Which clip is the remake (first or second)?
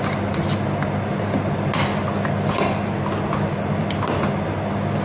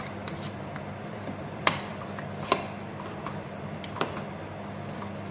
second